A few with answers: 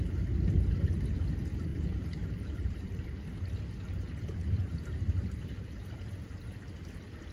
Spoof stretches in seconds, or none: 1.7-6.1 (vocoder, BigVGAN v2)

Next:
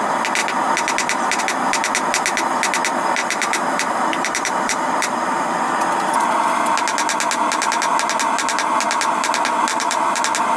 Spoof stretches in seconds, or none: 3.2-5.5 (vocoder, BigVGAN v2); 9.7-10.2

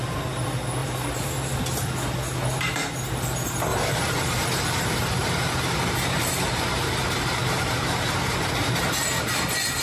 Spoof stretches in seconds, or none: 0.8-1.6 (vocoder, BigVGAN v2); 3.7-8.5

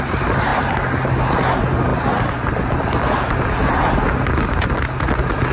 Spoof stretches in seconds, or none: none

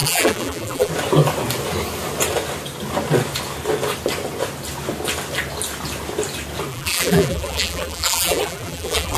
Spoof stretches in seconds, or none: 0.0-0.9 (vocoder, BigVGAN v2); 6.7-9.2